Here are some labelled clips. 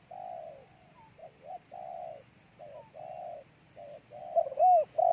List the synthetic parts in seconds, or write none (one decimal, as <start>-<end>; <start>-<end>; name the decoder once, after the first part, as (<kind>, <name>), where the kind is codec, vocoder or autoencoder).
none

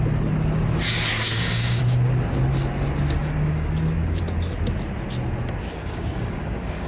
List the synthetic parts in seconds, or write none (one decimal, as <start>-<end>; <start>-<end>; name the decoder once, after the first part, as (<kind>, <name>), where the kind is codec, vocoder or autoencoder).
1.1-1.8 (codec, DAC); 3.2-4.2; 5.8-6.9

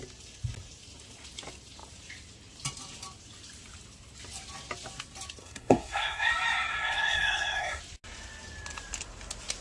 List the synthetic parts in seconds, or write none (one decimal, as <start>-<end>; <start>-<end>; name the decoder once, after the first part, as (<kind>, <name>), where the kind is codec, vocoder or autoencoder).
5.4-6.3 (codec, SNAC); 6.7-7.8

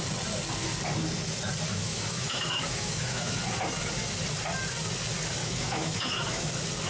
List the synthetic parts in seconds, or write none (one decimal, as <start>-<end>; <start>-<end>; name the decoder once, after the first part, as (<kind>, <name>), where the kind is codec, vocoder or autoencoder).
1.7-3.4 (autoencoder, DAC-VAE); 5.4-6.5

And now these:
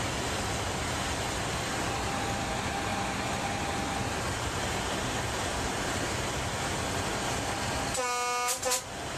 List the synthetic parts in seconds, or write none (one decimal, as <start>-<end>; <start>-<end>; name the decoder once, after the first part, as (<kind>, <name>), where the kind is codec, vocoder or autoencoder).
none

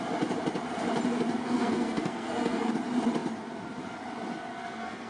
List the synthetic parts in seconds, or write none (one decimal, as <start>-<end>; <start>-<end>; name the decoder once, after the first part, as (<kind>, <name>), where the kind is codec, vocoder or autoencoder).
1.4-2.7 (codec, SNAC); 4.5-5.1

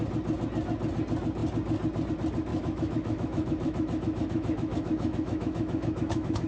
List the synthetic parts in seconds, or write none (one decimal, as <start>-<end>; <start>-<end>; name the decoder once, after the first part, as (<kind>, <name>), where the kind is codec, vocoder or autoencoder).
2.5-6.5 (autoencoder, DAC-VAE)

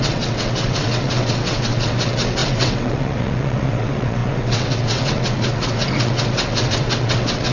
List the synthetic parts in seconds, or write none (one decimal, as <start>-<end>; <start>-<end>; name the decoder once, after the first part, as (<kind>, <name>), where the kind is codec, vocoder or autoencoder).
0.0-7.5 (vocoder, WaveNeXt)